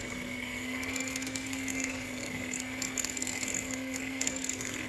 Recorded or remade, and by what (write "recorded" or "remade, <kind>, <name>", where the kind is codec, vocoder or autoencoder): remade, codec, SNAC